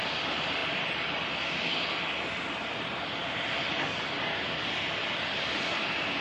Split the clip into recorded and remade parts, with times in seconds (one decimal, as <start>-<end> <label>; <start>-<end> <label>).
0.0-0.6 recorded; 0.6-1.3 remade; 1.3-6.2 recorded

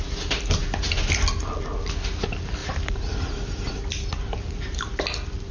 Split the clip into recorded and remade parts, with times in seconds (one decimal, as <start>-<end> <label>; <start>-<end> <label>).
0.0-2.6 recorded; 2.6-3.7 remade; 3.7-4.3 recorded; 4.3-5.5 remade

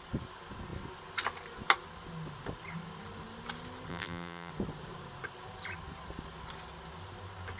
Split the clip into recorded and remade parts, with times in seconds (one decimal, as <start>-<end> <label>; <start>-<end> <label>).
0.0-3.9 recorded; 3.9-4.5 remade; 4.5-7.6 recorded

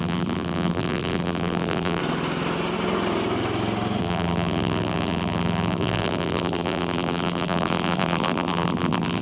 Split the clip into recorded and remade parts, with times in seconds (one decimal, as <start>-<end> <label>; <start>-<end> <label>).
0.0-2.0 remade; 2.0-4.0 recorded; 4.0-9.2 remade

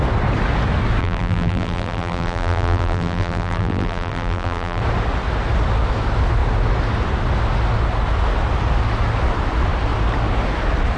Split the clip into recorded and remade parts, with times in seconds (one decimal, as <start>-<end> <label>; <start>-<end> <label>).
0.0-1.0 recorded; 1.0-4.8 remade; 4.8-11.0 recorded

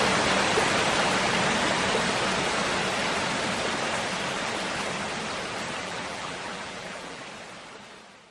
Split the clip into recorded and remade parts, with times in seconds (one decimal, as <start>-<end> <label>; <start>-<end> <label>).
0.0-5.8 recorded; 5.8-7.2 remade; 7.2-8.3 recorded

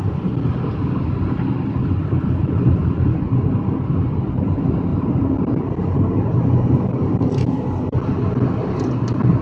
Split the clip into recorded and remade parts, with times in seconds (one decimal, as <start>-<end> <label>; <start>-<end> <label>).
0.0-4.9 recorded; 4.9-5.6 remade; 5.6-9.4 recorded